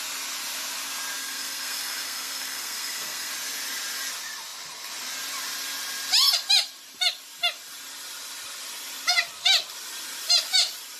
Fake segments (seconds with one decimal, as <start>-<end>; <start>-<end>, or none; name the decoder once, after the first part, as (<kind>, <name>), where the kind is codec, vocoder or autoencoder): 1.2-3.3 (codec, SNAC)